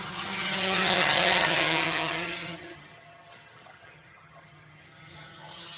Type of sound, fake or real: fake